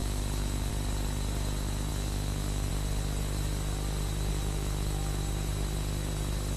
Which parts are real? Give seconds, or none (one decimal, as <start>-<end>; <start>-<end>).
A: 0.7-1.9; 2.7-4.3; 5.2-6.6

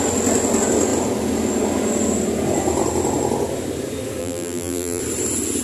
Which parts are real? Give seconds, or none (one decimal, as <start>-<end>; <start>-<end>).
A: 0.0-4.2; 5.0-5.6

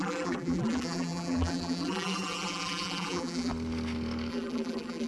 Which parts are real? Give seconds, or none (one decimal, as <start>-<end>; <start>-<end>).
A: 3.5-4.3

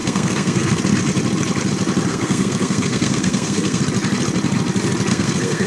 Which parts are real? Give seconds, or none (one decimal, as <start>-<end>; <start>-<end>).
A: 0.8-2.1; 3.8-5.1

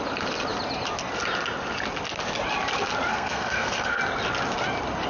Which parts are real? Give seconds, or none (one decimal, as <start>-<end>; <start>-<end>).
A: 0.0-3.1; 4.0-5.1

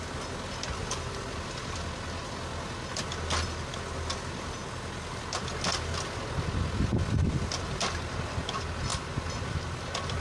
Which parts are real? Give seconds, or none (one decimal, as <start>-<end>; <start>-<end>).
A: 0.0-10.2